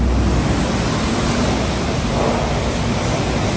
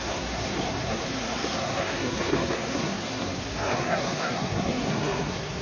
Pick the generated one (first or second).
second